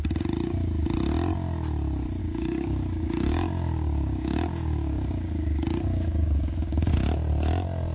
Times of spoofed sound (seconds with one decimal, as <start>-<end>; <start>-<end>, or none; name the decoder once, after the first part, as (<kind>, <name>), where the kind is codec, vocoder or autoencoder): 2.2-6.9 (codec, DAC)